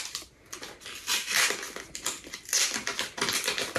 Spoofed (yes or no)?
no